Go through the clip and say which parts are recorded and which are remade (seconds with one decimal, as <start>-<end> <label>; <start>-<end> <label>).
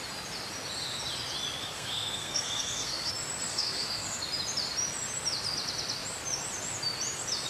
0.0-1.6 recorded; 1.6-3.1 remade; 3.1-3.5 recorded; 3.5-4.2 remade; 4.2-7.5 recorded